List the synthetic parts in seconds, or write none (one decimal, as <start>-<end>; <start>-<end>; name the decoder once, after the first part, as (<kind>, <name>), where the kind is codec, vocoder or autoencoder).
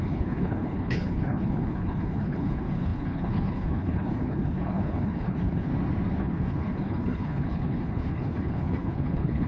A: 0.0-5.7 (codec, HILCodec); 6.2-9.5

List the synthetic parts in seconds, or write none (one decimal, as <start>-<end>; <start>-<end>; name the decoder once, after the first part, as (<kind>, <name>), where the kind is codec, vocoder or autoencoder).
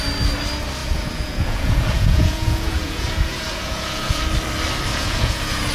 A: 0.8-4.2 (vocoder, Vocos); 4.9-5.7